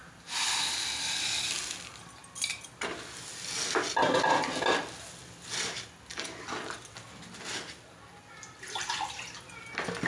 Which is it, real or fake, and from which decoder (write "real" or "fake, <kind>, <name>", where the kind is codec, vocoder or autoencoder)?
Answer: real